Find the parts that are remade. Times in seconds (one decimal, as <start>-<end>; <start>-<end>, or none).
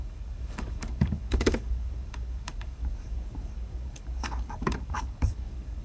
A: 0.0-5.8